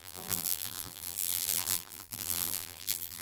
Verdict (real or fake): fake